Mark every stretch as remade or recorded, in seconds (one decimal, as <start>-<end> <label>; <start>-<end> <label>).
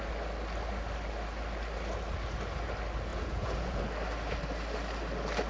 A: 0.0-3.1 recorded; 3.1-3.8 remade; 3.8-5.5 recorded